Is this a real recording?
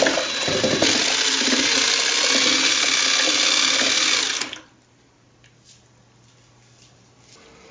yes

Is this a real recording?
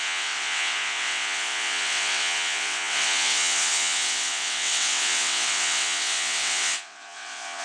no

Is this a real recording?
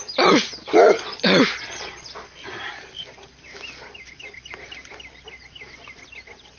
yes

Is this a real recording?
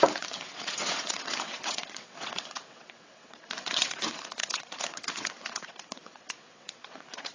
no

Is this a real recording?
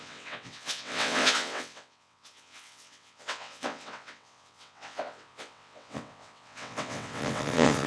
no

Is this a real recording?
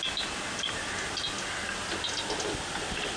yes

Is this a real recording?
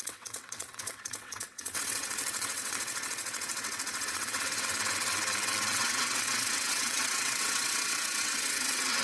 no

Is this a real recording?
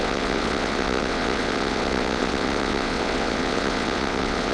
no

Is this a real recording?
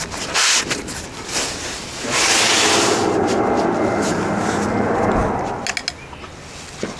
yes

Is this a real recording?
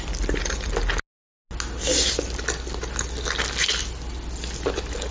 yes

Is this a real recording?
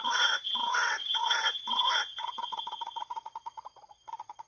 no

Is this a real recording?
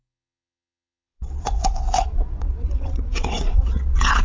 no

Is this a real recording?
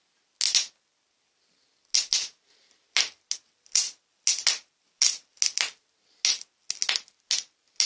yes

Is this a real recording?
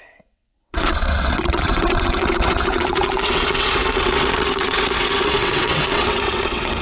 no